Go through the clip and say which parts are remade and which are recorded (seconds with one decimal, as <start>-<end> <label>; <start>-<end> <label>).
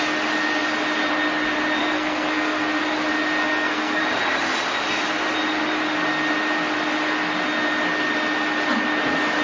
0.0-1.8 recorded; 1.8-2.8 remade; 2.8-3.4 recorded; 3.4-4.0 remade; 4.0-9.4 recorded